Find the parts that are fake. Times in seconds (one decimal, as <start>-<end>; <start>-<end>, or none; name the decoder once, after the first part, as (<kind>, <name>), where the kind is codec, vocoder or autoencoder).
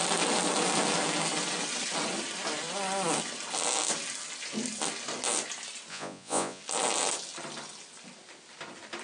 5.9-6.6 (vocoder, Vocos)